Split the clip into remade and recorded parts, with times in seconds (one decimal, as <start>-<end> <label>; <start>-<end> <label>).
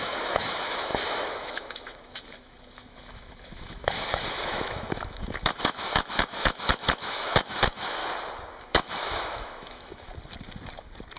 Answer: 0.0-8.0 remade; 8.0-8.6 recorded; 8.6-10.1 remade; 10.1-11.2 recorded